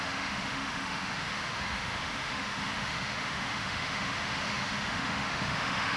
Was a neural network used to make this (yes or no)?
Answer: yes